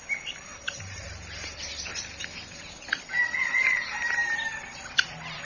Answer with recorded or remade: remade